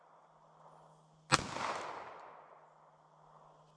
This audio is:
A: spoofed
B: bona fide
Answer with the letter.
B